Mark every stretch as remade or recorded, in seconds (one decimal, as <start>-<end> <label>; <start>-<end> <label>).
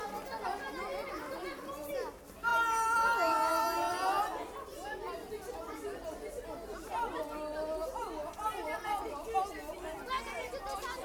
0.0-0.9 recorded; 0.9-1.7 remade; 1.7-8.2 recorded; 8.2-10.0 remade; 10.0-11.0 recorded